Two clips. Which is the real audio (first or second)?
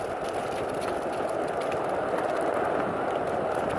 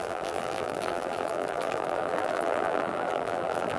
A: first